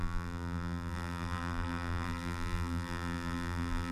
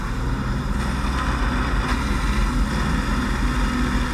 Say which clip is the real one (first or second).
second